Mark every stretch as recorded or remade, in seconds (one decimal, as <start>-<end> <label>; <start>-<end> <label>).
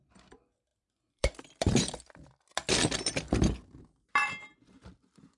0.0-0.7 recorded; 0.7-2.0 remade; 2.0-4.2 recorded; 4.2-5.4 remade